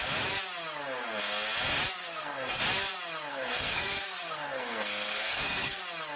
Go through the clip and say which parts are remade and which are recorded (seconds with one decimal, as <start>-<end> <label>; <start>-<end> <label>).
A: 0.0-2.0 recorded; 2.0-2.6 remade; 2.6-3.3 recorded; 3.3-5.8 remade; 5.8-6.2 recorded